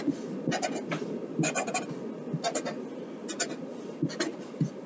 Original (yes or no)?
yes